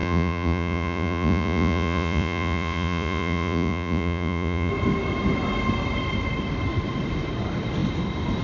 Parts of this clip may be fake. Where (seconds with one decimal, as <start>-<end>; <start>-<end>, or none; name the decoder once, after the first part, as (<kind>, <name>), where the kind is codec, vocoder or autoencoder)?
0.0-4.7 (vocoder, Vocos)